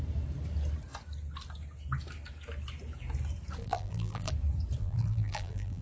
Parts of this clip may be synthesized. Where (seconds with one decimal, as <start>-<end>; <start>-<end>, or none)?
3.6-4.3; 4.8-5.8